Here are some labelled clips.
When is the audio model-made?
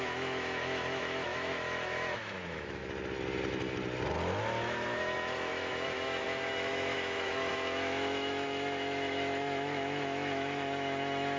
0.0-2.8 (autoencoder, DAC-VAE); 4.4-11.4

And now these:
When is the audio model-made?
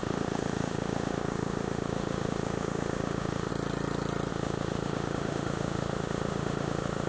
0.0-3.5 (autoencoder, DAC-VAE); 4.3-7.1